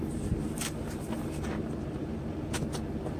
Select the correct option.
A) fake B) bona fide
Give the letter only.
A